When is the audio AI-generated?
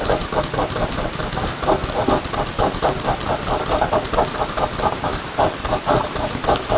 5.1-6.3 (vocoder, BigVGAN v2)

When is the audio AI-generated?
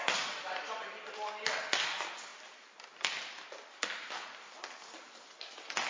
none